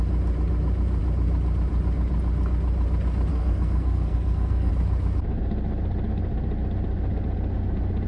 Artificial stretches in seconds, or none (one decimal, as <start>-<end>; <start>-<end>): 3.3-4.7